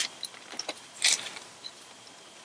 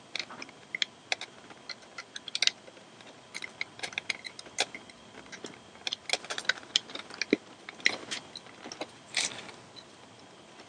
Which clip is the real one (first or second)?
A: second